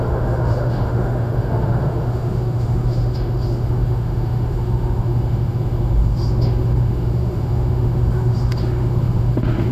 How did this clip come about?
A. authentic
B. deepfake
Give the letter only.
B